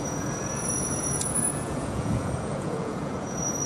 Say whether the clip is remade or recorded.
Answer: remade